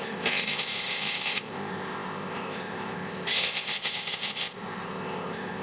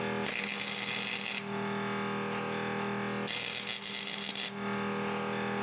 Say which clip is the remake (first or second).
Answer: first